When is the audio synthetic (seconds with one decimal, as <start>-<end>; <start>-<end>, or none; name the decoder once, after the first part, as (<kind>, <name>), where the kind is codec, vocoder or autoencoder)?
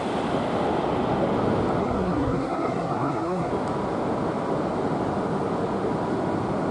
1.8-3.5 (codec, SNAC)